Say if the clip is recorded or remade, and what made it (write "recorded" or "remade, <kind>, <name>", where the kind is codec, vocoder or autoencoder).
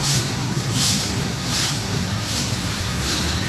remade, codec, SNAC